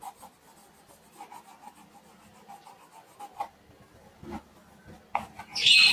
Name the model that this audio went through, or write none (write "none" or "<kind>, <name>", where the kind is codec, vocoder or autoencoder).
none